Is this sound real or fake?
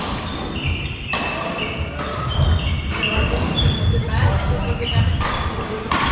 real